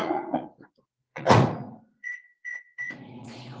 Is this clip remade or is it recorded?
remade